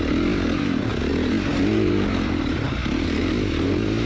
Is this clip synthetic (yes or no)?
no